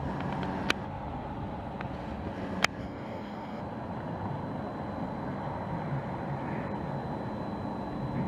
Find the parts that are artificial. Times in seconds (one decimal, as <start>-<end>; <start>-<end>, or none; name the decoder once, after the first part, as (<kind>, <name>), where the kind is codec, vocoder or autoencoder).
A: 2.8-3.6 (codec, DAC)